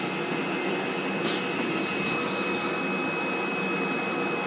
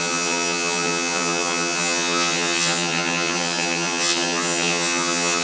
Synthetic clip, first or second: second